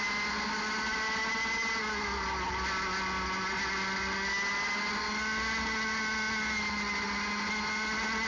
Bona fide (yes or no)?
yes